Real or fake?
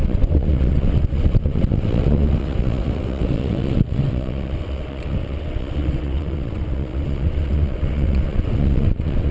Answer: fake